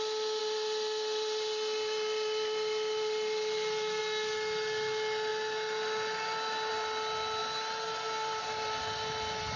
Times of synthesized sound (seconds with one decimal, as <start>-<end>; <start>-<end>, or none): 0.4-4.0; 7.4-8.8